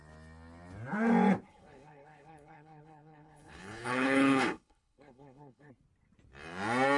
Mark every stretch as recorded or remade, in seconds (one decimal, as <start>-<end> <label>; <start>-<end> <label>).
0.0-1.5 recorded; 1.5-5.7 remade; 5.7-7.0 recorded